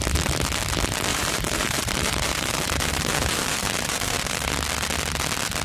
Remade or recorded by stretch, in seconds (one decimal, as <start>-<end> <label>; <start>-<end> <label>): 0.0-1.1 recorded; 1.1-4.5 remade; 4.5-5.6 recorded